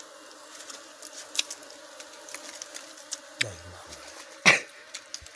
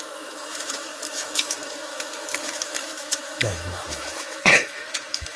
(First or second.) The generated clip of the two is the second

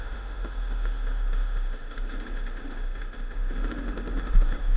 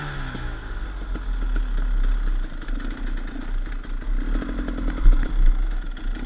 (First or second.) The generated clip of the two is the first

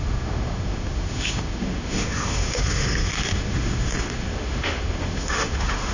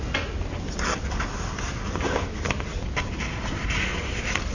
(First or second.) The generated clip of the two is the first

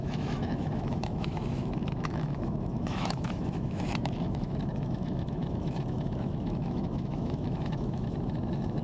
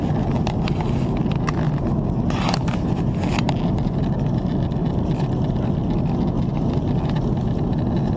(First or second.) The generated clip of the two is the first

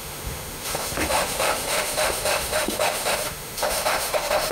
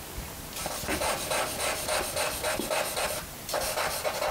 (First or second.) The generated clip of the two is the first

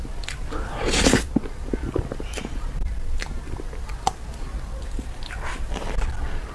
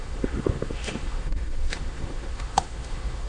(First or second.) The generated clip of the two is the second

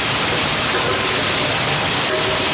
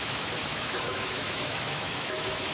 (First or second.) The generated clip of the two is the second